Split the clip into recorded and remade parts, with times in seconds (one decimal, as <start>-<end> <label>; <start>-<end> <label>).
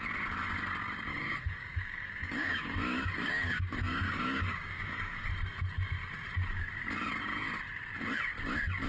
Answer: 0.0-1.1 recorded; 1.1-5.3 remade; 5.3-8.9 recorded